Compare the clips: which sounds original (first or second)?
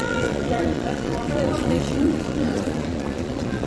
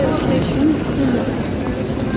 second